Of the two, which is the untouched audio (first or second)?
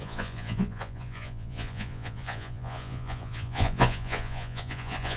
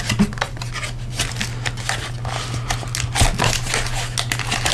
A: second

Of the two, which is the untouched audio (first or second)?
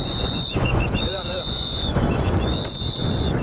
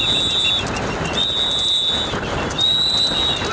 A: second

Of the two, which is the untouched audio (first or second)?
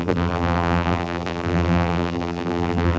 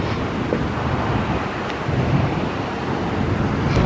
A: second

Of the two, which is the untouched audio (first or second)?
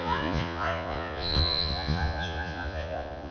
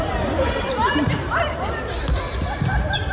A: second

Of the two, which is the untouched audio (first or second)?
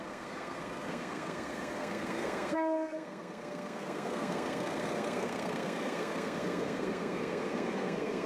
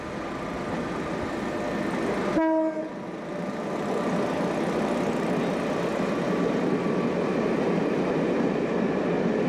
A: second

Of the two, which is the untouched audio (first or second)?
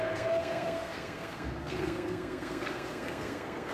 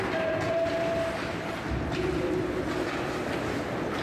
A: second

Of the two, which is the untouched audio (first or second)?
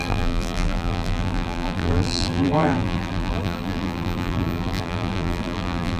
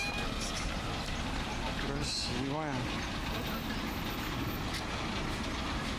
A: second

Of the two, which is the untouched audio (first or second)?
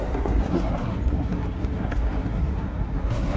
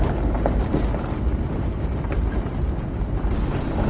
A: second